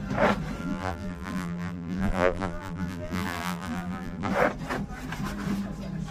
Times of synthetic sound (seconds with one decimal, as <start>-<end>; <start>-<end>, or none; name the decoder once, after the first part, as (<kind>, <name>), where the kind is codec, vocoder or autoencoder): 0.6-4.3 (vocoder, BigVGAN v2)